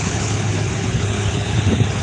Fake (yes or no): yes